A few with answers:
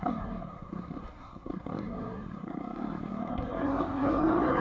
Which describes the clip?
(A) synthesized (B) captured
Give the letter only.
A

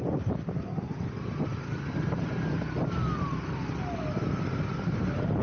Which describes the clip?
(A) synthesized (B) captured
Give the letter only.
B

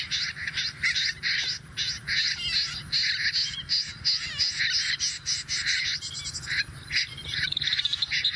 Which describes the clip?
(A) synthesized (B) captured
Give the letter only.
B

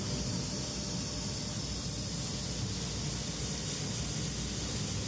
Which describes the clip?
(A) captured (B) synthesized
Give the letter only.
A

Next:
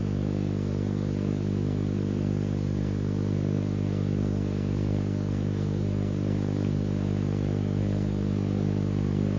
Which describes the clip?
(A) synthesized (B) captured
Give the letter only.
A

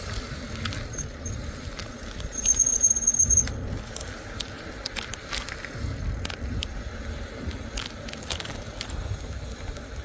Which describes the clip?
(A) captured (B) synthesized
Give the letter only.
A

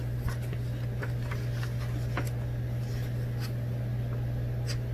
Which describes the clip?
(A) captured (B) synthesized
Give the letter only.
A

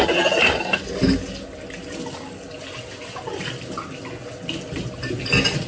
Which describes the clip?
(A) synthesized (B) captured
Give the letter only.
B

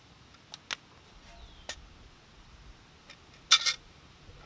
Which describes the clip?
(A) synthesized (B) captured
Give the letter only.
B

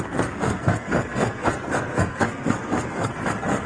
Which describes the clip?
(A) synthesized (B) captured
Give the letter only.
A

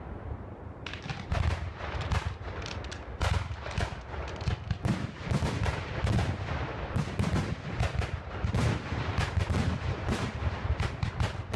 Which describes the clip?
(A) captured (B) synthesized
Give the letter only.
A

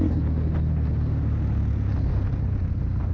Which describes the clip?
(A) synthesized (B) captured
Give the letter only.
B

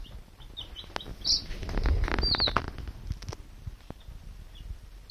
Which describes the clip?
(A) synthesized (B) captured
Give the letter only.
B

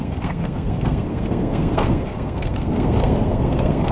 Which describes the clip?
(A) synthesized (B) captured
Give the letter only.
A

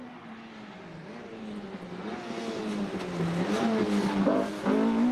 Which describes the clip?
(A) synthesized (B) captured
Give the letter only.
B